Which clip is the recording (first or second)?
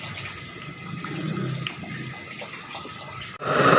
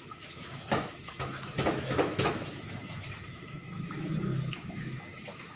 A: first